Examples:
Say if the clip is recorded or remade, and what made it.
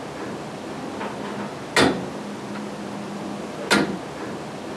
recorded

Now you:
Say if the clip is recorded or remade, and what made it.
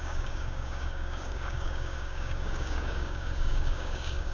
remade, codec, DAC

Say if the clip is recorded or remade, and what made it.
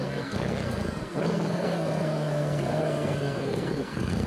remade, codec, SNAC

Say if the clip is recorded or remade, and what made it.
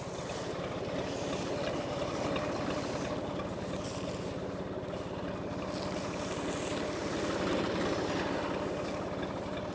recorded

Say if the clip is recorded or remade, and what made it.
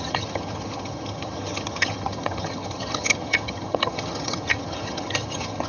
remade, vocoder, HiFi-GAN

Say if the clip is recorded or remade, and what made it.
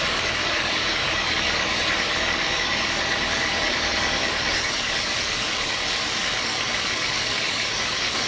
remade, codec, DAC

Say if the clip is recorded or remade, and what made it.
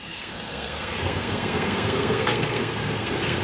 remade, codec, SNAC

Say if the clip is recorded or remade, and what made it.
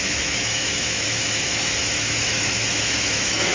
remade, autoencoder, DAC-VAE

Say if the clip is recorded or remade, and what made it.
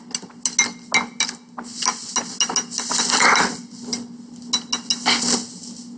recorded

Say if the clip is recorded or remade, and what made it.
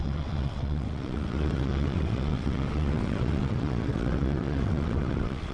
remade, vocoder, WaveNeXt